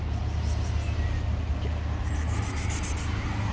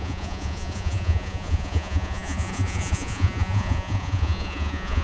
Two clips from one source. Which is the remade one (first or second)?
second